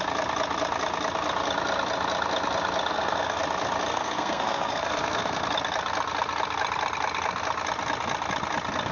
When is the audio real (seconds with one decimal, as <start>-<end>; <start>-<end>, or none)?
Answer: 0.0-2.9; 3.4-3.9; 5.4-8.9